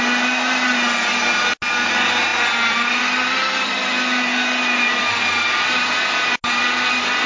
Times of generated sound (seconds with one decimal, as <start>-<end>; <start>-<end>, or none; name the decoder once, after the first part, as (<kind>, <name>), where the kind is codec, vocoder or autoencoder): none